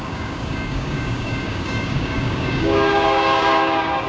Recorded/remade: remade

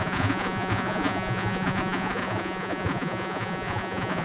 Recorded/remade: remade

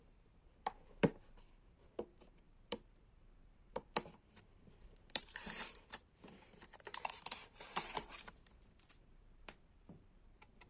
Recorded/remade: remade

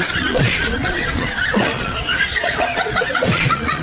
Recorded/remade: remade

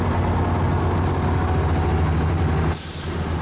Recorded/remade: recorded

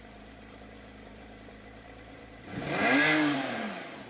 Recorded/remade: remade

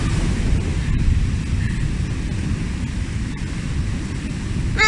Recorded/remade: recorded